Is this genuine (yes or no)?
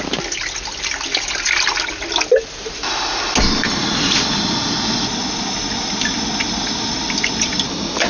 yes